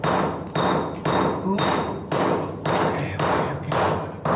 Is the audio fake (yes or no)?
no